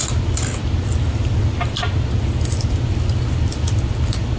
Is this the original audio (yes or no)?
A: yes